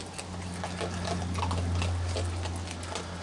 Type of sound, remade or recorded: recorded